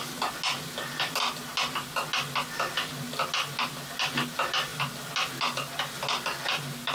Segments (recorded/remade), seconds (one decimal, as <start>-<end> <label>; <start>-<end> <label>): 0.0-6.9 recorded